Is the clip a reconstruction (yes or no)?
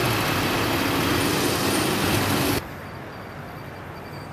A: no